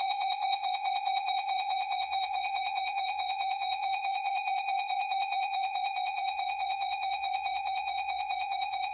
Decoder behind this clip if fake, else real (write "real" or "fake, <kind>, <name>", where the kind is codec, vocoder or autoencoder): fake, vocoder, Vocos